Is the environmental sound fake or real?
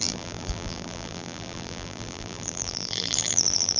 fake